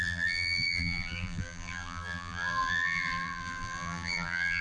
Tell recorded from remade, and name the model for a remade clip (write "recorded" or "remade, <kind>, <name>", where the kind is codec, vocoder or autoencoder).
remade, vocoder, BigVGAN v2